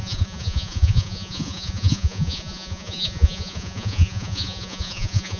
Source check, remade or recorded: remade